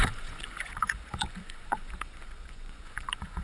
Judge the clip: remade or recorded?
remade